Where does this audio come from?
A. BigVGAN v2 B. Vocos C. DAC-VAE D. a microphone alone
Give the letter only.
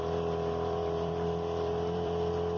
A